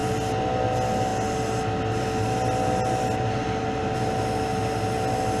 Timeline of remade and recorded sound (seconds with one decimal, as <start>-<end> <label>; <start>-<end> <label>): 0.0-5.4 recorded